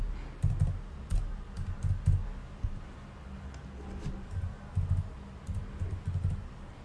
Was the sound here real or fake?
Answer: real